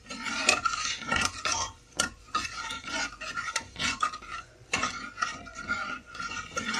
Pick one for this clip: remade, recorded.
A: remade